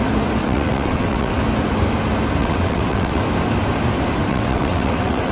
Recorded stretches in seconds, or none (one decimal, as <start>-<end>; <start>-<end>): 0.0-0.4; 1.4-2.4; 3.2-4.3